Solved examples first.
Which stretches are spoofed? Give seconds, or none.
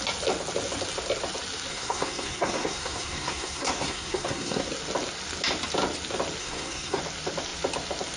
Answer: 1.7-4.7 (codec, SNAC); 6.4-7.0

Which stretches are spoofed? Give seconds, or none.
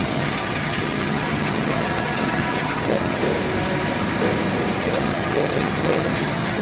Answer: 0.0-3.2 (vocoder, HiFi-GAN); 4.8-6.6